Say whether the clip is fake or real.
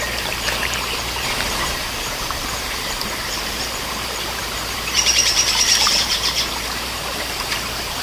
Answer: fake